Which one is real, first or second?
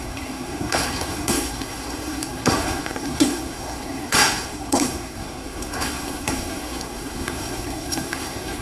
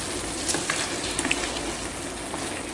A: second